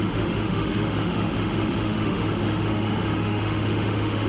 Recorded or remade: remade